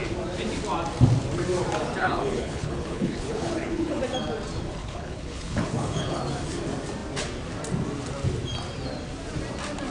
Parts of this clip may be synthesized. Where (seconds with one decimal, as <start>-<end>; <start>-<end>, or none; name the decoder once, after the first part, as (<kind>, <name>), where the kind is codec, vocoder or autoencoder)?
2.0-4.0 (codec, HILCodec); 4.8-6.2